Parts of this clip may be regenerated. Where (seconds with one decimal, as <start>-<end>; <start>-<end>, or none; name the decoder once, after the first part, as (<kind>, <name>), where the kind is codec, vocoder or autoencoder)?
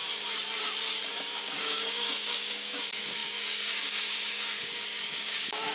1.1-5.7 (codec, DAC)